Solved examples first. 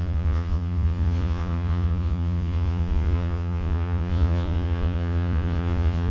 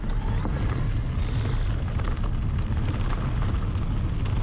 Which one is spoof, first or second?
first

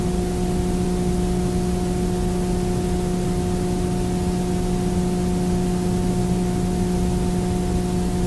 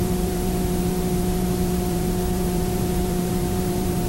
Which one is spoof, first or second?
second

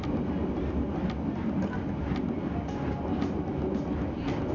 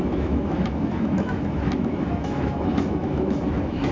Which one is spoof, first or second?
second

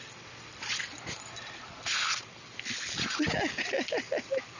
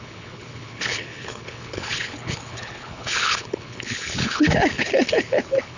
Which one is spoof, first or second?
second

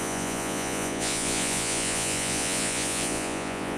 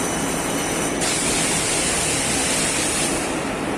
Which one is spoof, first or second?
first